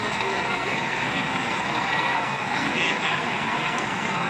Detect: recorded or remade remade